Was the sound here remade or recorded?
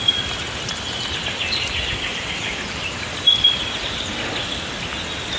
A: recorded